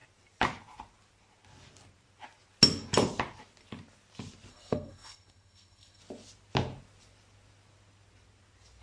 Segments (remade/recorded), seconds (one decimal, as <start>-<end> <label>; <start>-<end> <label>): 0.0-4.5 recorded; 4.5-6.0 remade; 6.0-8.8 recorded